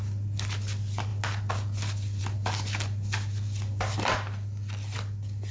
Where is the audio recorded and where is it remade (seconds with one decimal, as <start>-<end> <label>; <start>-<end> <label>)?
0.0-5.5 recorded